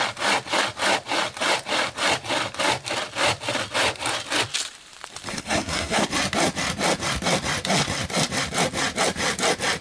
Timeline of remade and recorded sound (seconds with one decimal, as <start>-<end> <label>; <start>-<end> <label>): 0.0-5.3 recorded; 5.3-6.1 remade; 6.1-9.8 recorded